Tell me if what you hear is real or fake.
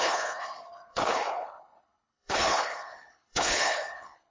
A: fake